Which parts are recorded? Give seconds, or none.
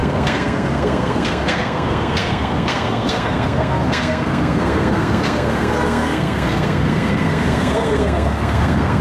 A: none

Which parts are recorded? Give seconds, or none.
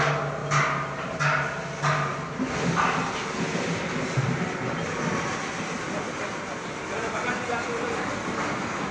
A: 0.0-8.9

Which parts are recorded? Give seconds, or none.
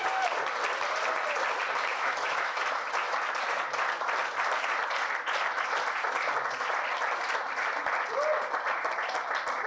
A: 0.0-1.9; 2.6-9.7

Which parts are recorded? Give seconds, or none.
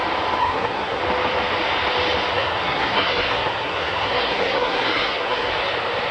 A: 0.0-0.4; 1.0-2.3; 5.5-6.1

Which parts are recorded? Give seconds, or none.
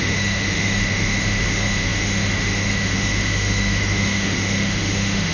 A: none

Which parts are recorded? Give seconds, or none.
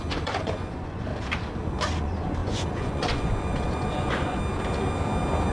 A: 1.1-2.0; 4.4-5.5